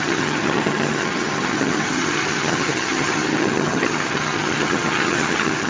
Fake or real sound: fake